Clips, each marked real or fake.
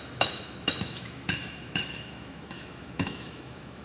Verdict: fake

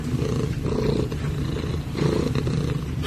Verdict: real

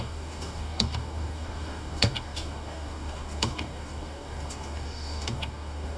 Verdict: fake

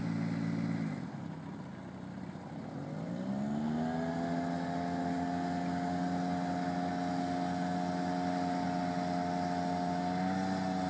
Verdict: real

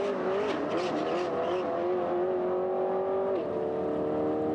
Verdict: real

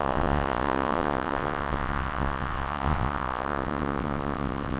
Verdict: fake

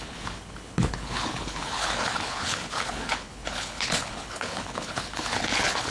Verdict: fake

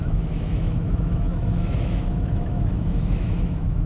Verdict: fake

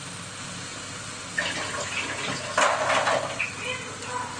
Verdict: real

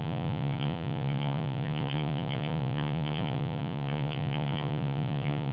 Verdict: fake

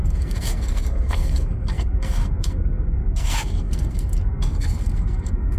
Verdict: fake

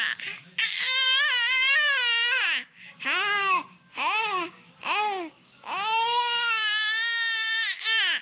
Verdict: fake